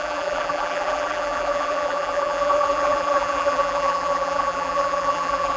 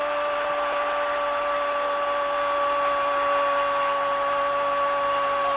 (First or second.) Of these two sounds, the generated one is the first